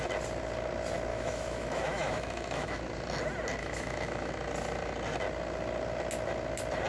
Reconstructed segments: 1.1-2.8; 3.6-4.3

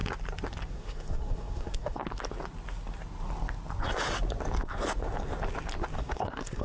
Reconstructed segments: 0.7-2.0; 6.0-6.6

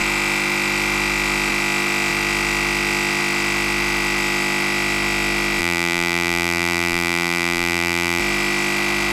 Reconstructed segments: 5.6-8.2

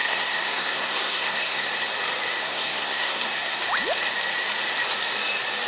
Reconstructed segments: 0.0-1.7; 2.4-3.6

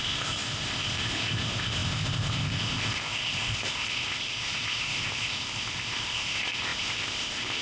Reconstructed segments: 0.0-7.6

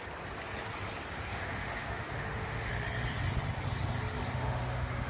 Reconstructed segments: 1.3-2.7; 4.2-5.1

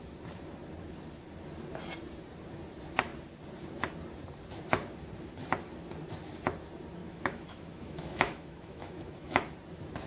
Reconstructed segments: 7.0-9.5